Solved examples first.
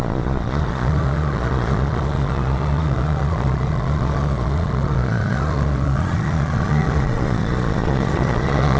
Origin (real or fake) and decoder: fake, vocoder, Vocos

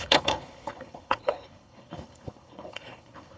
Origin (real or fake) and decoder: fake, codec, HILCodec